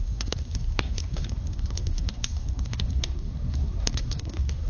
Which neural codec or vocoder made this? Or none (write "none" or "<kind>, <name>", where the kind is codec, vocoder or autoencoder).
codec, SNAC